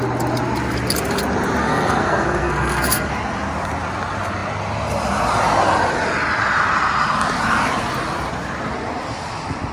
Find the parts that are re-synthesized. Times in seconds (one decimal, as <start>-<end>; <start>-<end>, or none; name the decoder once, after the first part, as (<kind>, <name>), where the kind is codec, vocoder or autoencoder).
1.6-3.1 (codec, SNAC)